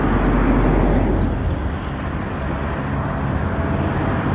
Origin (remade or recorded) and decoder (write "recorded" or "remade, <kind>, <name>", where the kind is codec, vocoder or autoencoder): recorded